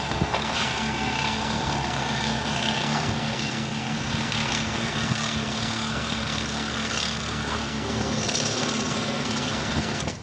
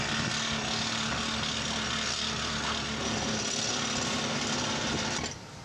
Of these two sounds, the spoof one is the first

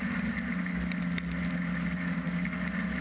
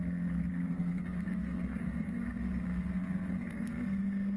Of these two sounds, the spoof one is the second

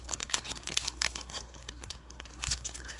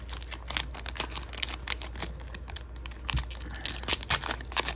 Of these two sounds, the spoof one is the first